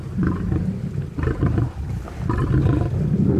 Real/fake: fake